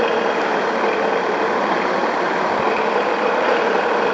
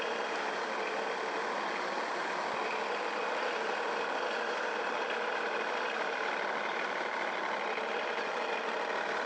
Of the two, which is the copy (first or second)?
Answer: first